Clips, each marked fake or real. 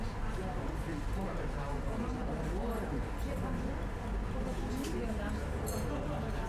real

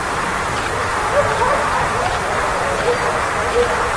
fake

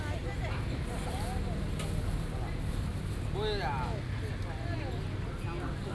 real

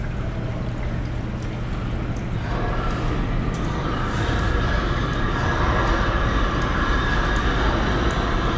real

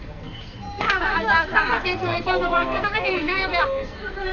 fake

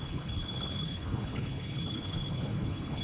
fake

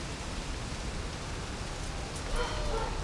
real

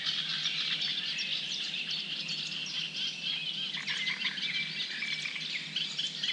real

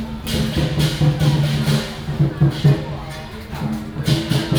real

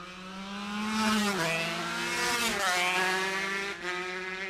real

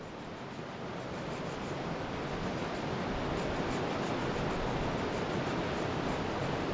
real